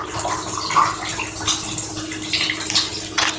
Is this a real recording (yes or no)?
yes